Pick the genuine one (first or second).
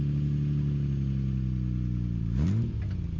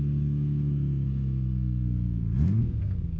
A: first